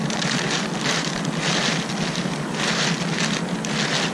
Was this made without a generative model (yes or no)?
yes